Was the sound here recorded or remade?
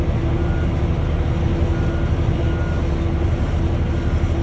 recorded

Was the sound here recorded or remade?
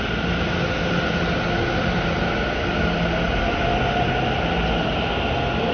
recorded